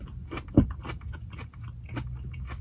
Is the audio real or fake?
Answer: real